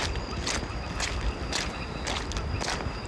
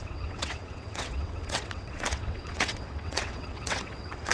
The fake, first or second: second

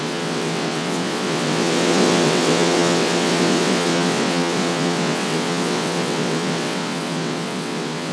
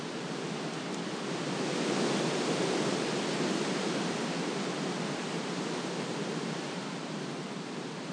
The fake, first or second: first